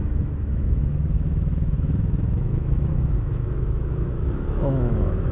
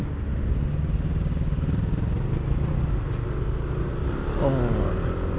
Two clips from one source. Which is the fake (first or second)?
first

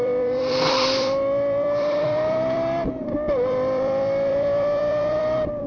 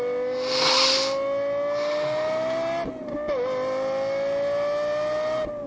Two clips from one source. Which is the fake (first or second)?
first